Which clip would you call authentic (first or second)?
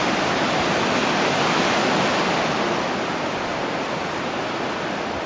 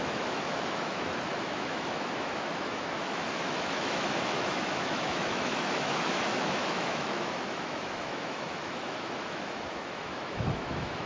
first